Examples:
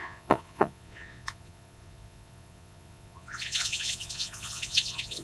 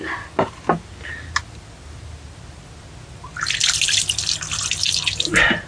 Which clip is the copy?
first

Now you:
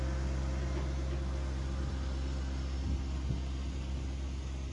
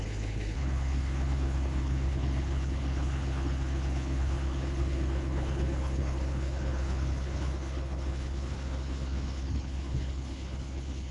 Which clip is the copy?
second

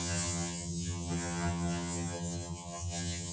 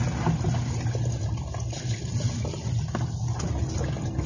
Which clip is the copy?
first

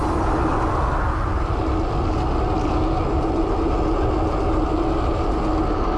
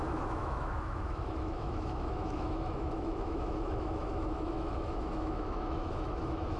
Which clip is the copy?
second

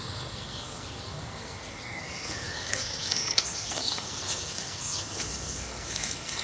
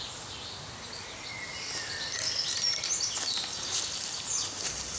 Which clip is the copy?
first